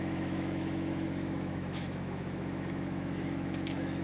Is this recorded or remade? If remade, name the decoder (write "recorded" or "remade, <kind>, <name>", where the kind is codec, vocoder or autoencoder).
remade, autoencoder, DAC-VAE